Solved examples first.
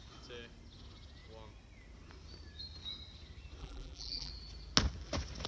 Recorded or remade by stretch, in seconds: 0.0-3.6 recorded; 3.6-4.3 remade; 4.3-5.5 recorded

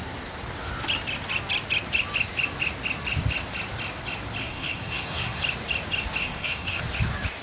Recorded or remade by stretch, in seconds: 0.0-4.4 recorded; 4.4-5.4 remade; 5.4-6.2 recorded; 6.2-6.8 remade; 6.8-7.4 recorded

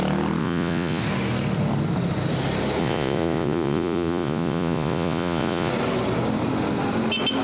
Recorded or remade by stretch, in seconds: 0.0-0.4 recorded; 0.4-1.0 remade; 1.0-2.8 recorded; 2.8-5.7 remade; 5.7-7.4 recorded

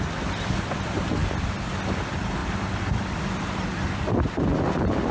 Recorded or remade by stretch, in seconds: 0.0-5.1 recorded